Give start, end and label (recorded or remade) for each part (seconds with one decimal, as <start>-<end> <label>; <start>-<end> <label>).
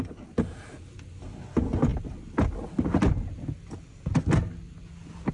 0.0-5.3 recorded